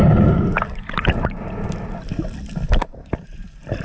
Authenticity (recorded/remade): recorded